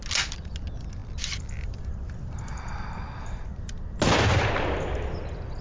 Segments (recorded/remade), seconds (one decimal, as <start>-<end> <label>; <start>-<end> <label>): 0.0-5.6 recorded